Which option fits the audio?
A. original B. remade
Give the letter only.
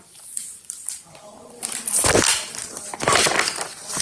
A